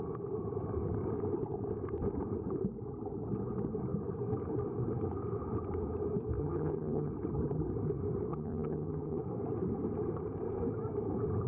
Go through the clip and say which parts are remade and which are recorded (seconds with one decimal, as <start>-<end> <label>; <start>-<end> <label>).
0.0-6.4 recorded; 6.4-7.1 remade; 7.1-8.3 recorded; 8.3-9.2 remade; 9.2-11.5 recorded